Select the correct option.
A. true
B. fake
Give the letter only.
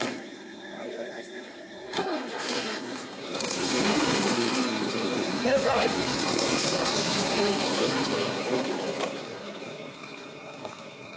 B